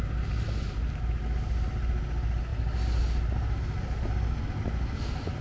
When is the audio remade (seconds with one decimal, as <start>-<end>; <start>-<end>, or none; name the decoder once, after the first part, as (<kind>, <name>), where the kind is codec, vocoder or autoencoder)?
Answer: none